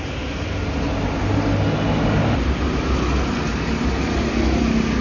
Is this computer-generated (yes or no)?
no